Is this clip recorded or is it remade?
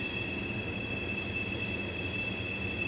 recorded